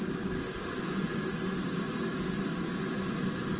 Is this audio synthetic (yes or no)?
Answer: no